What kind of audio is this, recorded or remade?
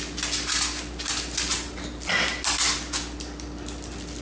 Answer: recorded